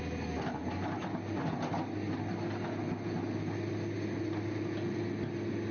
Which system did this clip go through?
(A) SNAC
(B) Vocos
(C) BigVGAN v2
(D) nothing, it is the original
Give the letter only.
D